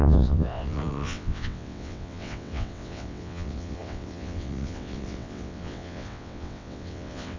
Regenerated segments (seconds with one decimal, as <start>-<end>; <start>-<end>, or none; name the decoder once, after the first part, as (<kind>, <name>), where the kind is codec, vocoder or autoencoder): 0.0-7.4 (vocoder, WaveNeXt)

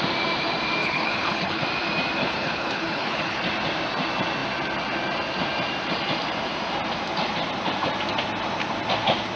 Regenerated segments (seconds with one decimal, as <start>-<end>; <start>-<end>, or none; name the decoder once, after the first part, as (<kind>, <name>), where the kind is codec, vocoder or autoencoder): 0.8-1.6 (codec, HILCodec); 2.2-3.4

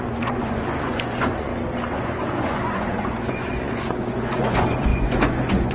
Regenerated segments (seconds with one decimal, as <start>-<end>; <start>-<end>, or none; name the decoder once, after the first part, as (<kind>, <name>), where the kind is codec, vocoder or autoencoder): 0.0-1.5 (vocoder, Vocos); 2.0-5.7

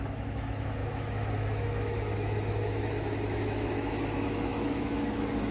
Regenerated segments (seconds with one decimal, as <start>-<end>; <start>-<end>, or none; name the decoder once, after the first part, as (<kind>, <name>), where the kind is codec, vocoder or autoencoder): 0.0-5.5 (autoencoder, DAC-VAE)

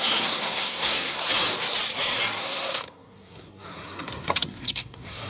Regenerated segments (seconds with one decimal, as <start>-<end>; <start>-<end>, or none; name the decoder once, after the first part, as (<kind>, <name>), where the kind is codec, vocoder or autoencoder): 0.0-1.2 (codec, SNAC); 2.4-5.3